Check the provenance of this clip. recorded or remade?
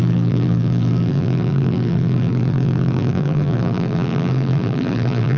remade